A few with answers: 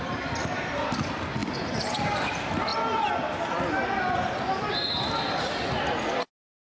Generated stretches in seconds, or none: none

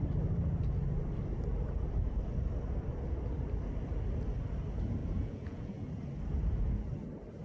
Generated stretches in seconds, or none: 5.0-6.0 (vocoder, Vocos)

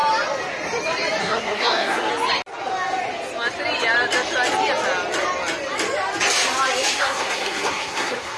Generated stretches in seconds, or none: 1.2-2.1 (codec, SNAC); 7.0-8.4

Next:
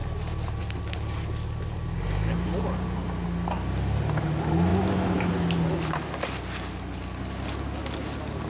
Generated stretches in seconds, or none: none